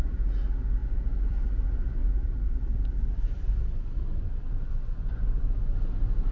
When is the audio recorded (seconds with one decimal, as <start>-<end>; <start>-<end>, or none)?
0.0-0.8; 1.5-2.0; 5.4-6.3